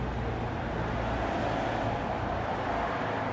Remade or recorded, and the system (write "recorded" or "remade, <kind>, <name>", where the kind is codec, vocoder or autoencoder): recorded